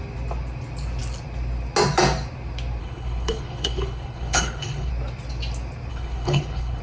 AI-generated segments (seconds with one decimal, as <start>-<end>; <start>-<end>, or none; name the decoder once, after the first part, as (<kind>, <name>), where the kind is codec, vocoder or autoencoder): 2.8-4.9 (codec, HILCodec); 5.9-6.8